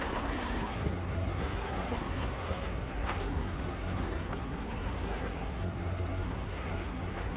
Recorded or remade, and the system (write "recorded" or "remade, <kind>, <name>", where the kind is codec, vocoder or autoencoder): remade, codec, SNAC